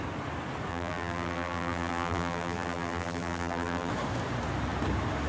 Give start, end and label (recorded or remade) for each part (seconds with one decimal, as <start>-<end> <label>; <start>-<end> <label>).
0.0-0.7 recorded; 0.7-3.9 remade; 3.9-5.3 recorded

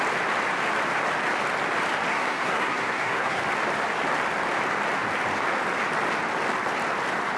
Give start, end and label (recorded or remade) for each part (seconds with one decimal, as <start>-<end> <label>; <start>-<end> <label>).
0.0-2.1 recorded; 2.1-3.4 remade; 3.4-7.4 recorded